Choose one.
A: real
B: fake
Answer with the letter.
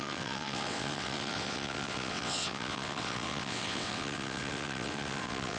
B